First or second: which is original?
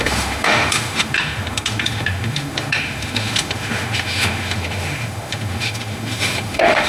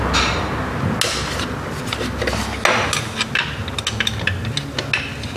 second